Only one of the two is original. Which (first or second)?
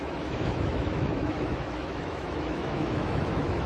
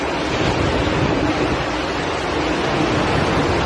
second